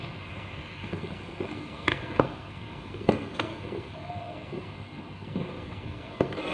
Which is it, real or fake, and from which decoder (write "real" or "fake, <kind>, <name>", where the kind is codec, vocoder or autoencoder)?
fake, codec, SNAC